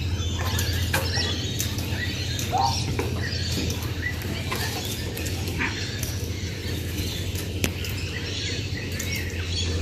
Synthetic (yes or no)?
no